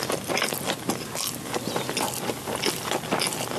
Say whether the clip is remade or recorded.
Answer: recorded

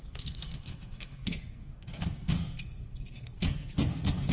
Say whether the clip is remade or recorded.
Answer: remade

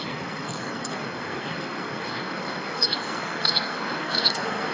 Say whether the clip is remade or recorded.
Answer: remade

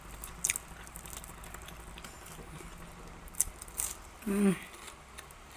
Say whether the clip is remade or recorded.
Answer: recorded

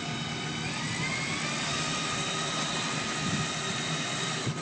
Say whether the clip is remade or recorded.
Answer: recorded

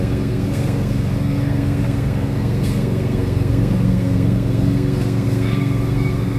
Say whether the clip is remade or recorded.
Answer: remade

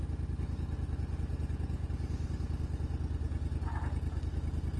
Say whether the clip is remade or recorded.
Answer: recorded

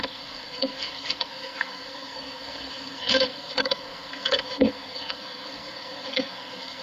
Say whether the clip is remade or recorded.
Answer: remade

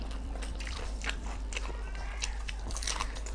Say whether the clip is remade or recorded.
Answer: recorded